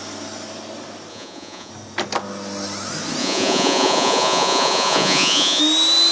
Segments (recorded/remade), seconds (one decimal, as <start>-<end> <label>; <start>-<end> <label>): 0.0-1.1 recorded; 1.1-1.7 remade; 1.7-3.2 recorded; 3.2-5.6 remade; 5.6-6.1 recorded